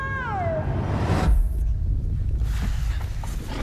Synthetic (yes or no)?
no